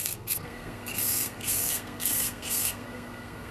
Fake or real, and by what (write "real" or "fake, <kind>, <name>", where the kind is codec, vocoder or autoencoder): fake, codec, SNAC